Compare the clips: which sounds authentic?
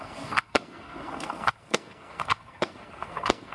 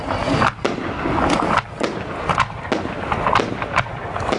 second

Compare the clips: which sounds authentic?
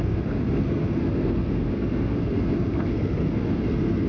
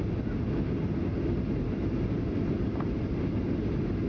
second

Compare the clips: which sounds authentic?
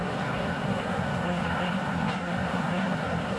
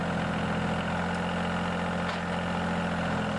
second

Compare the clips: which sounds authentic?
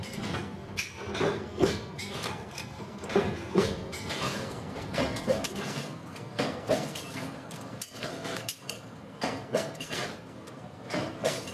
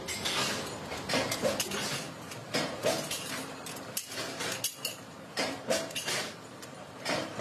second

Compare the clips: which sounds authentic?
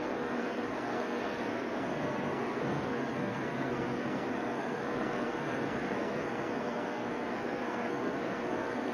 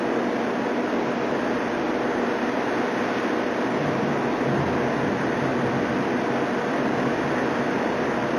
second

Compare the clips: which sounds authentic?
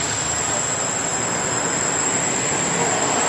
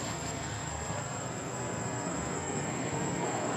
first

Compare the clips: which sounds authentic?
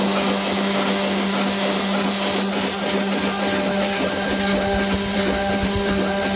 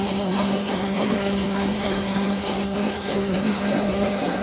first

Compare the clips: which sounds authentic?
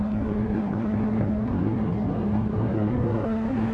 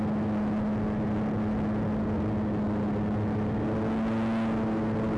second